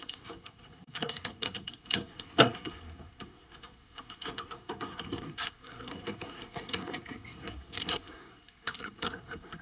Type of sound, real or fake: fake